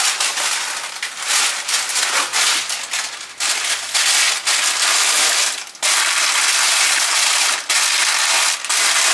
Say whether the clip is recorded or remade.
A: recorded